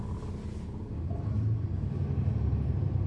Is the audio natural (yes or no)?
yes